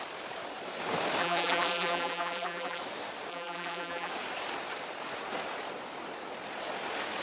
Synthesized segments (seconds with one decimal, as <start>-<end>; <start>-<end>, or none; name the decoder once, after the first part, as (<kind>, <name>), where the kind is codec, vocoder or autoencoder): 1.2-2.8 (vocoder, BigVGAN v2); 3.3-4.1